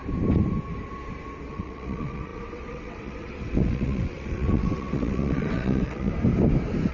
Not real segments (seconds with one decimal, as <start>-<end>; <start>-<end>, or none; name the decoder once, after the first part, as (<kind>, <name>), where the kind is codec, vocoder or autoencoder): 1.5-6.1 (vocoder, WaveNeXt)